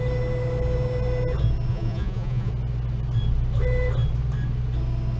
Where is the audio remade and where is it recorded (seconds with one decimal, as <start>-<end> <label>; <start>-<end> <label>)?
0.0-1.7 recorded; 1.7-2.5 remade; 2.5-5.2 recorded

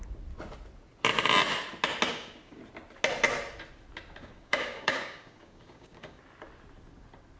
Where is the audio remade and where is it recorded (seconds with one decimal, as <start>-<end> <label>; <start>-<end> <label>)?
0.0-2.1 recorded; 2.1-2.6 remade; 2.6-4.2 recorded; 4.2-6.2 remade; 6.2-7.4 recorded

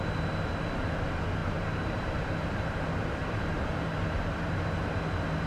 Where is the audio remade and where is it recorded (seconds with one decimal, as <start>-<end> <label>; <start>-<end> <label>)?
0.0-1.4 recorded; 1.4-4.7 remade; 4.7-5.5 recorded